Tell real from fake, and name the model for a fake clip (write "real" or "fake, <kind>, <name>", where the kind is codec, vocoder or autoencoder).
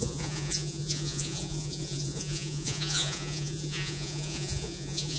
fake, vocoder, Vocos